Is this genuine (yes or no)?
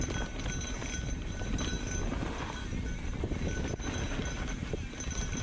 yes